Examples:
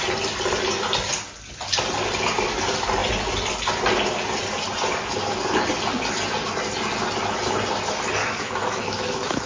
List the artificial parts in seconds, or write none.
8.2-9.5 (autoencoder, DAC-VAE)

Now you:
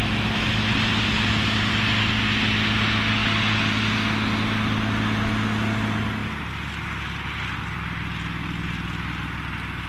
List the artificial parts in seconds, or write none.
none

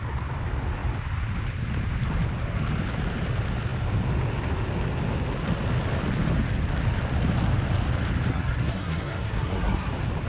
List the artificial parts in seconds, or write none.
8.3-9.9 (codec, SNAC)

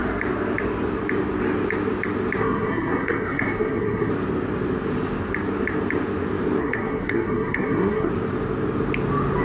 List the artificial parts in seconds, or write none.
2.4-4.1 (codec, SNAC); 6.6-8.1